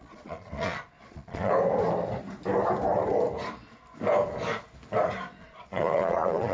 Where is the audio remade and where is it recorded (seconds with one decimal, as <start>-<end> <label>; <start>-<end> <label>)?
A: 0.0-1.5 remade; 1.5-5.4 recorded; 5.4-6.5 remade